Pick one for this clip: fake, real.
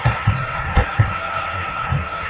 fake